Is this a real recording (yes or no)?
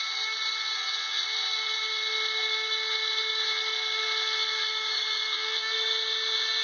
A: yes